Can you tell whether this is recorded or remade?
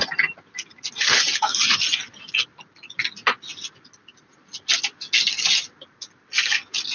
recorded